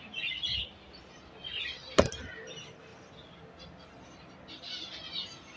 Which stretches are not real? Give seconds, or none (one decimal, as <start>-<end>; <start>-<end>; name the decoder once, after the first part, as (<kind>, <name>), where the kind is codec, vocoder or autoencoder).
none